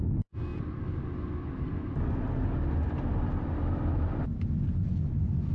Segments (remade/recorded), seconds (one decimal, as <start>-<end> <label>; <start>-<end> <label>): 0.0-5.5 recorded